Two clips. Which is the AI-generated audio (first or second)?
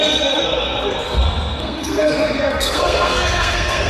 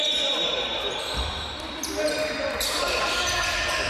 first